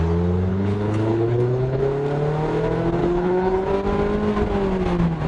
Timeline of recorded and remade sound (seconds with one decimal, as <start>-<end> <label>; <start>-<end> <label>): 0.0-0.5 recorded; 0.5-1.8 remade; 1.8-3.0 recorded; 3.0-3.7 remade; 3.7-5.3 recorded